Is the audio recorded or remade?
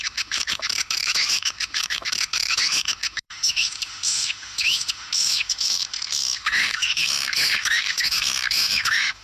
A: remade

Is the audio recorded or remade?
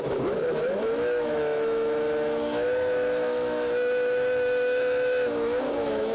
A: remade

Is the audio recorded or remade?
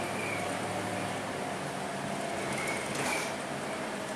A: recorded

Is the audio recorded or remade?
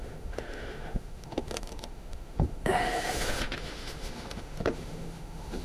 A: remade